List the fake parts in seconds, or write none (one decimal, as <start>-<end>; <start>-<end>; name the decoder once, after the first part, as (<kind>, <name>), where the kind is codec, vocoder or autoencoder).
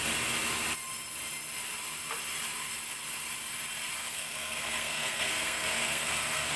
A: 4.0-6.6 (codec, SNAC)